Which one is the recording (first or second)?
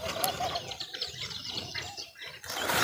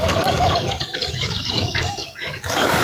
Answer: first